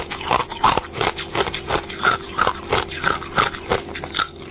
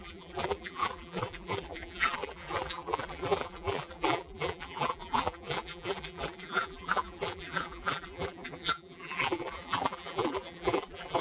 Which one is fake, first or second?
second